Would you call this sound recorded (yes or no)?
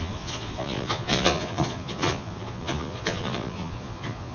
no